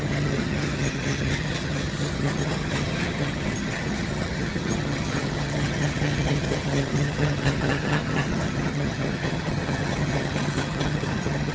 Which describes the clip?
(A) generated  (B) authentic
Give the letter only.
A